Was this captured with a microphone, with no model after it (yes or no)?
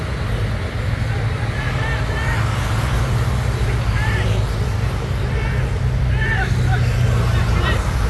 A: yes